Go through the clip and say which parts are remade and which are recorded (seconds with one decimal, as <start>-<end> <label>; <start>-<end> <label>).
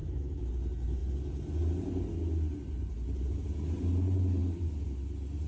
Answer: 0.0-0.5 remade; 0.5-5.5 recorded